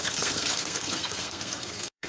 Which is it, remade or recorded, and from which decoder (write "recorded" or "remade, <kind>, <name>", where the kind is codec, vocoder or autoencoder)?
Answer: remade, codec, SNAC